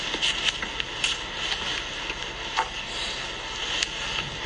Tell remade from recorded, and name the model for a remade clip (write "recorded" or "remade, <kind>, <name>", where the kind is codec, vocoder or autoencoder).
recorded